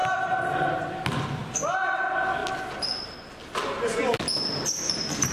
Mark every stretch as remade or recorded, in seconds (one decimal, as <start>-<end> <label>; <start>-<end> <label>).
0.0-5.3 recorded